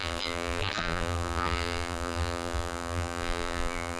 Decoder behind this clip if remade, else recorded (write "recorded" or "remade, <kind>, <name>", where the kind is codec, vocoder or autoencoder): remade, vocoder, BigVGAN v2